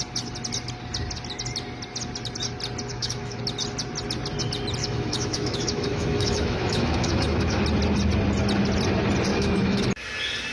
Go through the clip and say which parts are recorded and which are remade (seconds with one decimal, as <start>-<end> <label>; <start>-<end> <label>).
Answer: 0.0-2.9 recorded; 2.9-3.4 remade; 3.4-4.8 recorded; 4.8-7.6 remade; 7.6-9.3 recorded; 9.3-9.9 remade; 9.9-10.5 recorded

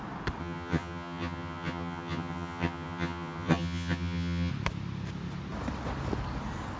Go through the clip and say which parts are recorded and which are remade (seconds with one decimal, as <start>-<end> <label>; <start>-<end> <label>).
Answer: 0.0-0.4 recorded; 0.4-4.5 remade; 4.5-6.8 recorded

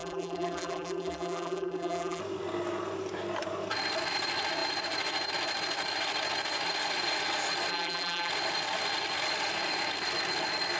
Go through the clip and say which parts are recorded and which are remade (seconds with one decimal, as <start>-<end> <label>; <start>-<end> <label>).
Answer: 0.0-2.2 remade; 2.2-7.7 recorded; 7.7-8.3 remade; 8.3-10.8 recorded

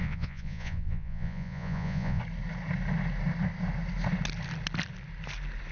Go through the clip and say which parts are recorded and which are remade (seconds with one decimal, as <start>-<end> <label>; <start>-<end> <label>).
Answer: 0.0-2.2 remade; 2.2-5.7 recorded

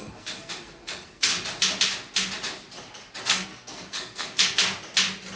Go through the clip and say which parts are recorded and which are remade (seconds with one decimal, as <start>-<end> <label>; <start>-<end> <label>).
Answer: 0.0-1.3 remade; 1.3-3.2 recorded; 3.2-4.6 remade; 4.6-5.4 recorded

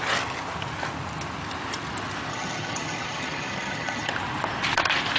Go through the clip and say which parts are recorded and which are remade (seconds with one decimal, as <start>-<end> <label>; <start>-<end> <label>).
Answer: 0.0-2.3 recorded; 2.3-4.1 remade; 4.1-5.2 recorded

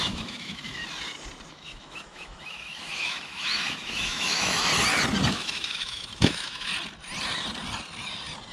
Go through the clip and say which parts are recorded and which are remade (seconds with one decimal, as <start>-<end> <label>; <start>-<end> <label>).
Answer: 0.0-0.8 remade; 0.8-1.5 recorded; 1.5-4.7 remade; 4.7-5.3 recorded; 5.3-6.7 remade; 6.7-8.5 recorded

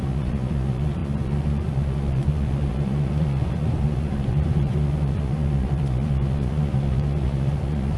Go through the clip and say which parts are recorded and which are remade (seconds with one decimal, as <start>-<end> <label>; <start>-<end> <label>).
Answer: 0.0-8.0 remade